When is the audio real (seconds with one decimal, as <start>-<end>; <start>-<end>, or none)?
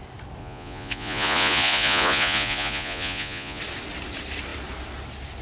0.0-0.4; 3.6-5.4